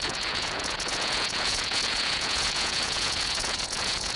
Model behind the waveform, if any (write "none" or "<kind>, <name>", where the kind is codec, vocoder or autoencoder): vocoder, Vocos